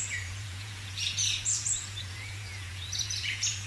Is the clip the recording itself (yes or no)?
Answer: no